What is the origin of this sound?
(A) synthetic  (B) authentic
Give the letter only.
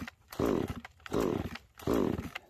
A